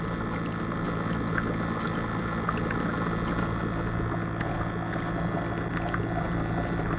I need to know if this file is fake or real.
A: real